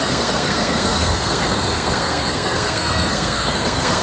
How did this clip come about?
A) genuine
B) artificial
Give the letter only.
B